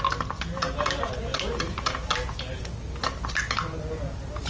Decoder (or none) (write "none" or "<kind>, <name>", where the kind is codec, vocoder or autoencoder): none